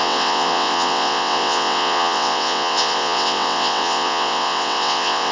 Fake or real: fake